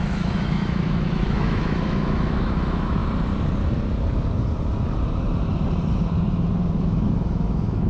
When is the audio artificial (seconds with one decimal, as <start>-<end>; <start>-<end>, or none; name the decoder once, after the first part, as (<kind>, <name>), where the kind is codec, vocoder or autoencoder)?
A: 0.0-3.0 (autoencoder, DAC-VAE); 6.8-7.9